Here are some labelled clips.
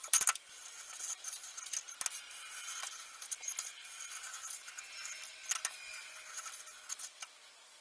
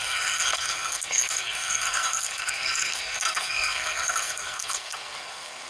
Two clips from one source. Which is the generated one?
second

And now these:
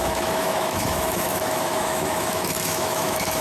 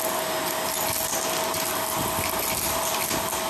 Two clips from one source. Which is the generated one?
first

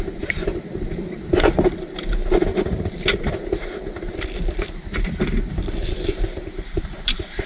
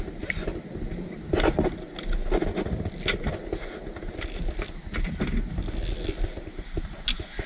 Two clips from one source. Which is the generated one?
first